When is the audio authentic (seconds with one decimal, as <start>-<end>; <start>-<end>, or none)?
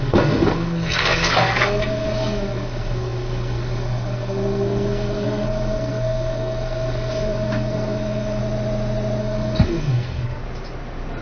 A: 8.4-9.2; 10.4-11.2